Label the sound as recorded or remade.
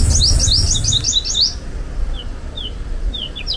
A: recorded